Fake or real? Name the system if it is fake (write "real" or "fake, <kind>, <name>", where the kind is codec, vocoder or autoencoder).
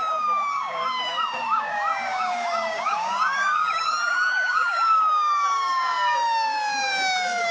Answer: fake, codec, DAC